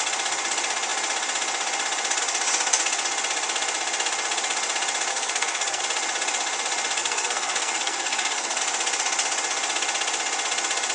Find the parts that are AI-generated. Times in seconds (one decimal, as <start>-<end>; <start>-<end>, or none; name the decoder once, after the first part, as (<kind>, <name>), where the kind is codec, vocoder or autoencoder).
5.1-5.8 (codec, SNAC); 7.0-8.6